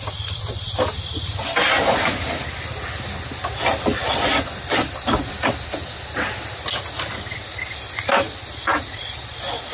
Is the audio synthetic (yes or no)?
no